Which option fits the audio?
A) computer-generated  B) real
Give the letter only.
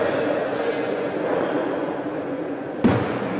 A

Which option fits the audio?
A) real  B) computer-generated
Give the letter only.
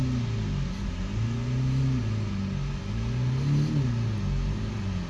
A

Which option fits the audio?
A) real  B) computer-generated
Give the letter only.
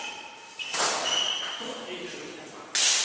A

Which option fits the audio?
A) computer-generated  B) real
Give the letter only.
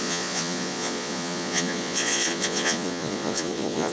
A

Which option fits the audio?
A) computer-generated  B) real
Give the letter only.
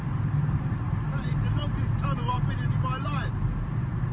A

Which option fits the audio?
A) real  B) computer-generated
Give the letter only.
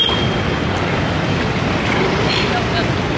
A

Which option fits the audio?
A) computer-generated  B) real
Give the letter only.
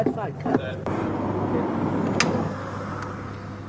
B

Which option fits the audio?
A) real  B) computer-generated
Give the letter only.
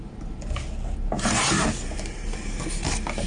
A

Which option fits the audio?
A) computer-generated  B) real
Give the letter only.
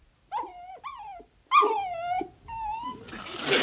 B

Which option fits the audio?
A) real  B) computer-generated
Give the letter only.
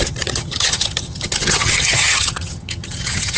B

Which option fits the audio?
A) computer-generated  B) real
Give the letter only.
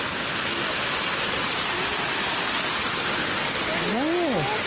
B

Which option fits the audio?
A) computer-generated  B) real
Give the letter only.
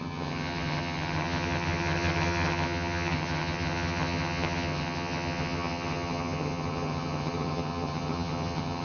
A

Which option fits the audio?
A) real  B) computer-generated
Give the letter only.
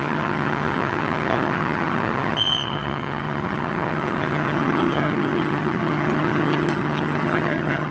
B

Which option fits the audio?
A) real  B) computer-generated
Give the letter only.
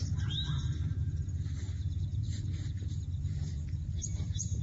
B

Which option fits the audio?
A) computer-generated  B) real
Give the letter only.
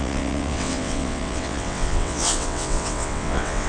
A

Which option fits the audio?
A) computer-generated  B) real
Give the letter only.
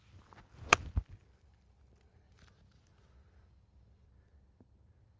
B